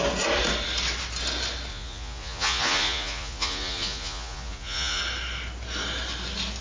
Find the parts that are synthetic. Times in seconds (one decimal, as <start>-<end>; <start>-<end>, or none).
1.7-5.0